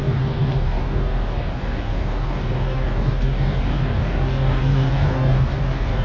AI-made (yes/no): yes